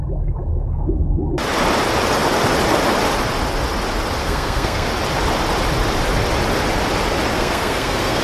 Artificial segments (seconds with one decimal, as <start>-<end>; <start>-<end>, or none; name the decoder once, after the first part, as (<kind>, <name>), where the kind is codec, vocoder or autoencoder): 0.5-1.3 (codec, SNAC); 4.2-4.9; 7.3-8.2